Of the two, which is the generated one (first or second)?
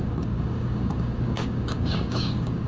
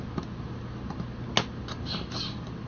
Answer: first